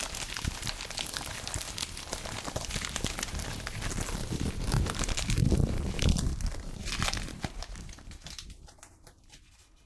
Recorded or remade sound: recorded